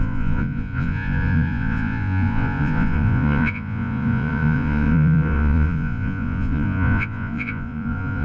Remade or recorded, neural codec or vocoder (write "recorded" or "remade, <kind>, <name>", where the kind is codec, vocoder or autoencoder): remade, vocoder, Vocos